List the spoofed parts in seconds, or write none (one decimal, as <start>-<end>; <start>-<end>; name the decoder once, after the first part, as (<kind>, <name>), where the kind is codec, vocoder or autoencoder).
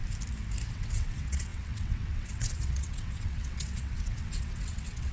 0.7-5.1 (vocoder, WaveNeXt)